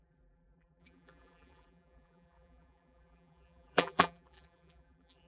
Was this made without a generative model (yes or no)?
no